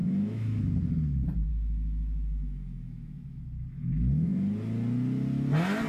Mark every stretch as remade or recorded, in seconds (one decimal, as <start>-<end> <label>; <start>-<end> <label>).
0.0-0.6 remade; 0.6-1.5 recorded; 1.5-3.4 remade; 3.4-5.9 recorded